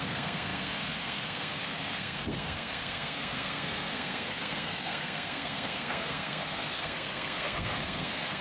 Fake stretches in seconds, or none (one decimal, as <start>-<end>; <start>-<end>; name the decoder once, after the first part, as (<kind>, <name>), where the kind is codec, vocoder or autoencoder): 0.0-8.4 (codec, SNAC)